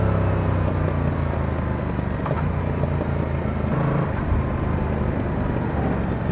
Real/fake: real